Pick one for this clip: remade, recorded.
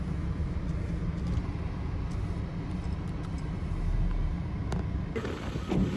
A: recorded